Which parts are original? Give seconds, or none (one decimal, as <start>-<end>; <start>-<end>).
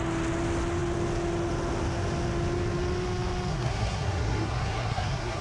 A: 0.0-3.5